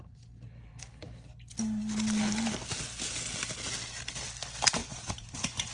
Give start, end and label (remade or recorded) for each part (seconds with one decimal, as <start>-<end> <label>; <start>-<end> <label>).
0.0-4.8 recorded; 4.8-5.7 remade